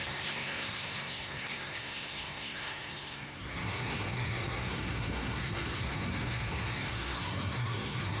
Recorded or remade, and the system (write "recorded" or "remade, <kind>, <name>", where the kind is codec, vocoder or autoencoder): remade, codec, SNAC